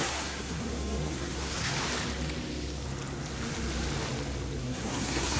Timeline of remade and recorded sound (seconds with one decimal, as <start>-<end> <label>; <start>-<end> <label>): 0.0-1.7 remade; 1.7-4.6 recorded; 4.6-5.4 remade